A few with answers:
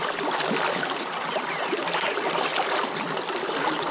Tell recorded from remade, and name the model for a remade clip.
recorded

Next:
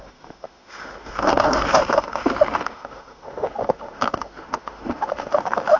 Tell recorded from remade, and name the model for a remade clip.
remade, autoencoder, DAC-VAE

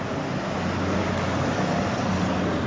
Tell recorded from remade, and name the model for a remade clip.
recorded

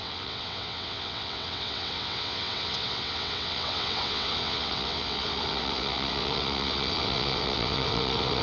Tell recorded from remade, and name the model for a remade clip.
remade, vocoder, WaveNeXt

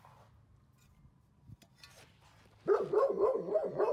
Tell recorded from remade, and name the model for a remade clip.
recorded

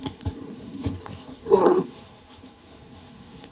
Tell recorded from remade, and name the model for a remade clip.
remade, codec, SNAC